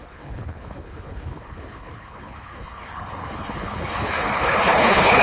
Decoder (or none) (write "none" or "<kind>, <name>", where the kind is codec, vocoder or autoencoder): codec, HILCodec